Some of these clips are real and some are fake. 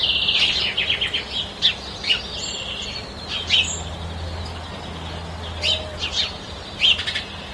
real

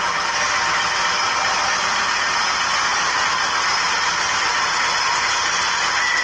real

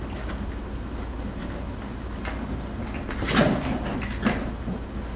real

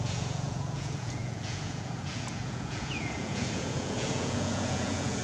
fake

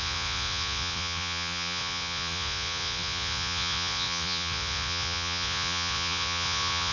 fake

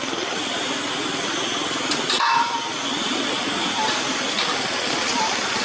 real